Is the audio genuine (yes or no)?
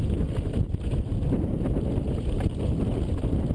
yes